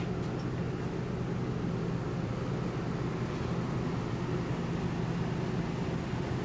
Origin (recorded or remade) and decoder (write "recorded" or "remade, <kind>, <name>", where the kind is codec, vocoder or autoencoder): recorded